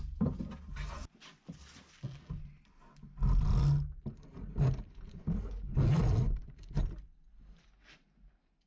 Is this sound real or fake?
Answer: real